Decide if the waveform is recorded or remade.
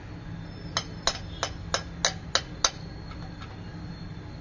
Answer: recorded